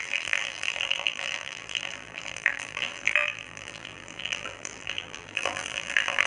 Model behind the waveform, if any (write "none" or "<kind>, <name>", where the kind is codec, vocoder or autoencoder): vocoder, BigVGAN v2